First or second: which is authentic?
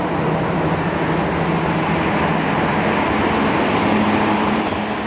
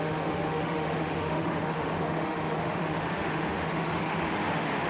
first